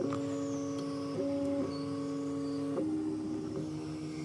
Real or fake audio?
real